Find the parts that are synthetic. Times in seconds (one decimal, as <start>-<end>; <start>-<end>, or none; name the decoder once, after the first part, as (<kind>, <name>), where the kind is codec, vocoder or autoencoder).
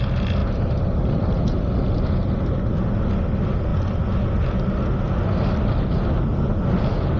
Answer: none